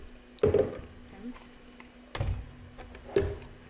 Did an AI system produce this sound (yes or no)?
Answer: no